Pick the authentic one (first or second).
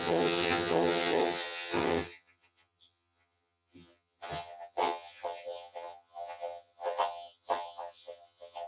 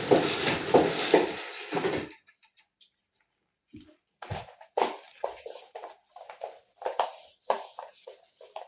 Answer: second